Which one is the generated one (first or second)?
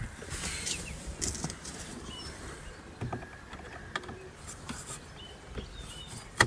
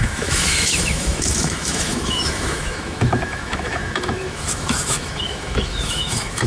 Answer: second